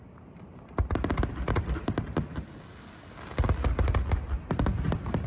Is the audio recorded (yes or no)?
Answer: yes